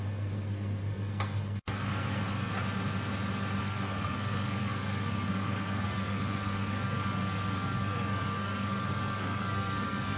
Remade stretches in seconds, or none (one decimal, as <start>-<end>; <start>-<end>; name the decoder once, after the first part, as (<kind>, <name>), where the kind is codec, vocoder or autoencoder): 0.0-2.5 (codec, SNAC); 3.6-10.2